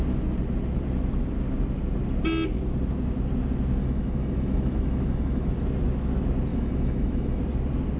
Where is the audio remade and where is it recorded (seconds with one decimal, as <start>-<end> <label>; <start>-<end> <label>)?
0.0-3.8 recorded; 3.8-5.5 remade; 5.5-6.5 recorded; 6.5-7.4 remade; 7.4-8.0 recorded